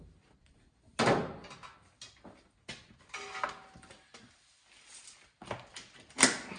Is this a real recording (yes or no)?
yes